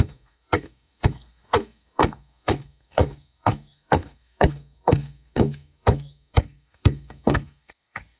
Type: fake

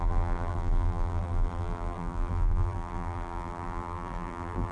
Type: fake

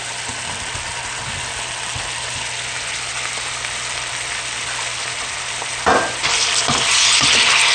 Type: real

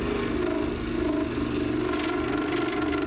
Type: real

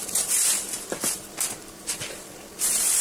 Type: fake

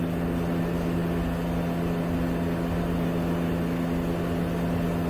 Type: real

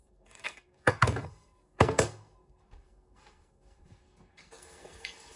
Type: fake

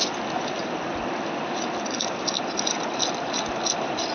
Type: real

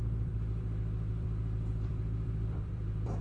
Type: fake